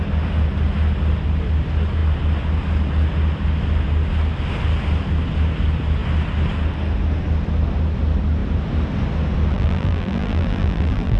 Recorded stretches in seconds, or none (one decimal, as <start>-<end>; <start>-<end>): 0.0-9.5

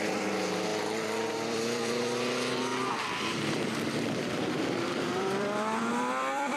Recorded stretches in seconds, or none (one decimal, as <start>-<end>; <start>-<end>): 0.7-1.3; 2.7-4.5

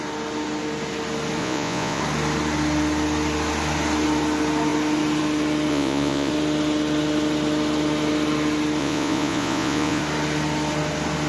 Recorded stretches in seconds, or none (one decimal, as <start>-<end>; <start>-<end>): 0.0-1.4; 2.0-5.7; 6.3-8.8; 10.0-11.3

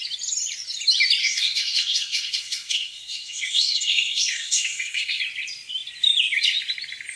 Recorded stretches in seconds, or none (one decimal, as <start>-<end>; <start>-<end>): 0.0-1.2; 5.2-7.2